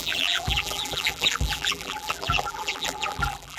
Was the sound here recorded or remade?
remade